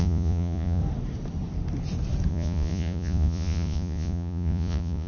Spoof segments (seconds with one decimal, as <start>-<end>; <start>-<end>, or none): 0.0-0.8; 2.3-5.1